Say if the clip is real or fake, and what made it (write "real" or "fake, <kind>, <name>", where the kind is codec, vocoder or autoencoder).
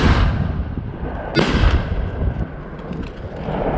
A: real